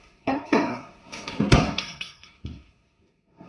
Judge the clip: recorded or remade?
remade